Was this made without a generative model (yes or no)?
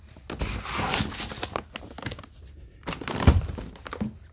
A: yes